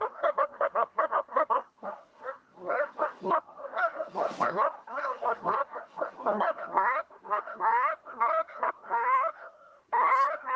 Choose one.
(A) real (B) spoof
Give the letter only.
B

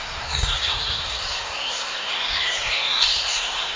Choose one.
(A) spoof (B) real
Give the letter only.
A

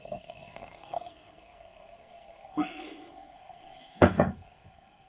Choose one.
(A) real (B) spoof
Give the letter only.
B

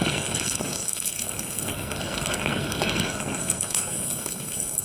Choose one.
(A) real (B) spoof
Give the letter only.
B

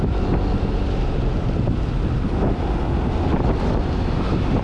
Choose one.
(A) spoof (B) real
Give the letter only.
B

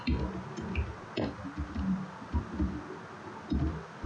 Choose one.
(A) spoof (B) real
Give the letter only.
B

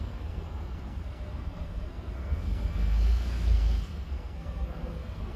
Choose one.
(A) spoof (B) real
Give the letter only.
A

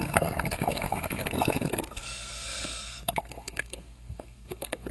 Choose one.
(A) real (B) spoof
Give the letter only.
B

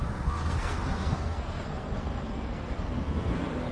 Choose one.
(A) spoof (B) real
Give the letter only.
A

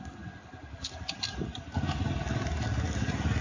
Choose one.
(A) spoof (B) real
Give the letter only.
B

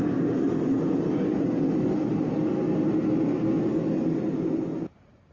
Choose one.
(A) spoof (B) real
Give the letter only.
B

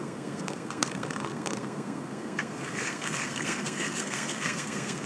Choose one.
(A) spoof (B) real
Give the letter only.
A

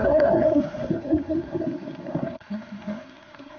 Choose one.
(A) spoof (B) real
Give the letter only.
A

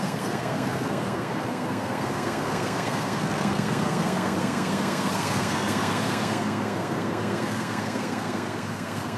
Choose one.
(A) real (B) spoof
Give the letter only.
B